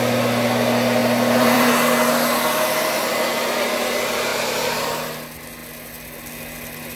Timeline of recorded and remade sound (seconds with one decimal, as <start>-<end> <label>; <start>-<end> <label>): 0.0-1.0 recorded; 1.0-1.7 remade; 1.7-7.0 recorded